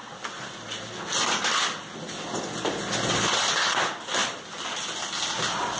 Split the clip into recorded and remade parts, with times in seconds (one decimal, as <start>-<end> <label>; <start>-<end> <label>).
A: 0.0-5.8 recorded